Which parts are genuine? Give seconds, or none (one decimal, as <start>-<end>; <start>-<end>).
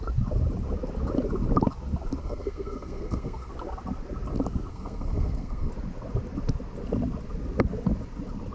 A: 0.0-2.2; 3.5-4.7; 5.7-8.5